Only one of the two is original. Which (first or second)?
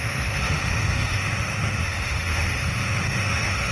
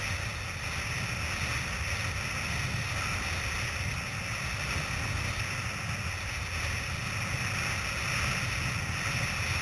second